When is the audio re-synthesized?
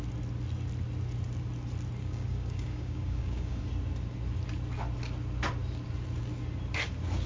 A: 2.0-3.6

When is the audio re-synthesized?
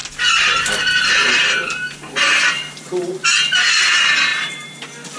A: 0.0-3.1; 4.3-5.2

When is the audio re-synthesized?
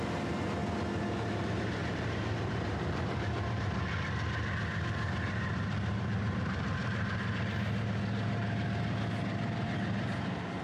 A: 0.0-0.6; 1.1-10.6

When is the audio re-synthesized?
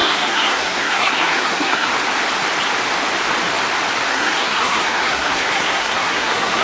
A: 0.0-1.9; 4.1-6.6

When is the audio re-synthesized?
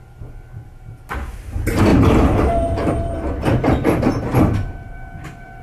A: 1.9-5.6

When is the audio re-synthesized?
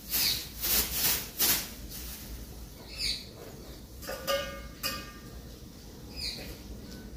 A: 3.4-6.7